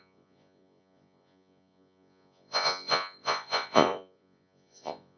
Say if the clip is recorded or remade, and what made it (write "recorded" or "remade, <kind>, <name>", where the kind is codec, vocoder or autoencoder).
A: remade, vocoder, Vocos